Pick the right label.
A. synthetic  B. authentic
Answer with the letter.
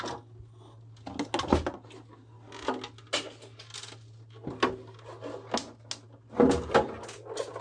B